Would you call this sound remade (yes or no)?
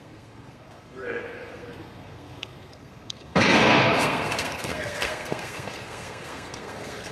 yes